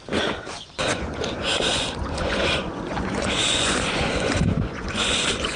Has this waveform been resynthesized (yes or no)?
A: yes